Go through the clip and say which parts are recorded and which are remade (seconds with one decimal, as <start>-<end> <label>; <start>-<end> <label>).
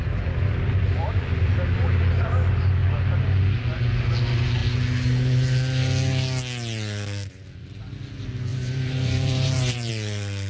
0.0-8.5 recorded; 8.5-9.9 remade; 9.9-10.5 recorded